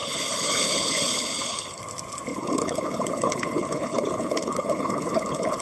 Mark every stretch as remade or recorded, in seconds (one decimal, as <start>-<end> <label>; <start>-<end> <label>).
0.0-1.8 remade; 1.8-2.3 recorded; 2.3-5.6 remade